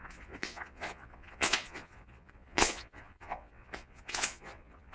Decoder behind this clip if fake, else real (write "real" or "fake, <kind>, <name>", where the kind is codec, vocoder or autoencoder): fake, vocoder, Vocos